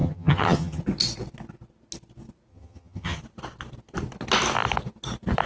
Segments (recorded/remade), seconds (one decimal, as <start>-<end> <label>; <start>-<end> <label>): 0.0-0.8 remade; 0.8-2.5 recorded; 2.5-3.2 remade; 3.2-5.5 recorded